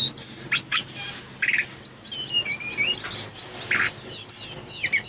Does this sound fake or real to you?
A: real